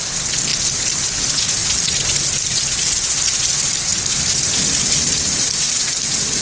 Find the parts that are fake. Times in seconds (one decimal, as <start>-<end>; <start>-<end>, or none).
3.9-5.2